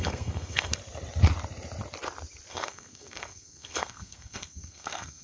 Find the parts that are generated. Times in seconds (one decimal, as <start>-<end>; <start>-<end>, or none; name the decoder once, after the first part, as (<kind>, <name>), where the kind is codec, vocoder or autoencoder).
0.0-0.8 (codec, SNAC); 2.5-5.2